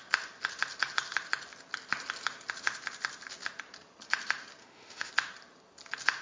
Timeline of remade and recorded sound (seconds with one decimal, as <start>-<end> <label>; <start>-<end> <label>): 0.0-4.6 recorded; 4.6-5.1 remade; 5.1-6.2 recorded